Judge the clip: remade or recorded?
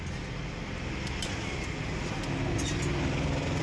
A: recorded